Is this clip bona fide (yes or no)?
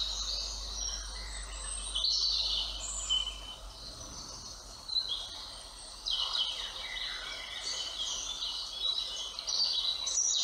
yes